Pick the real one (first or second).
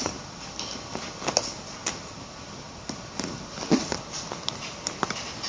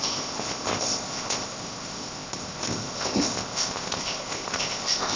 first